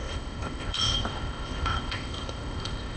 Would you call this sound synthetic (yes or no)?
yes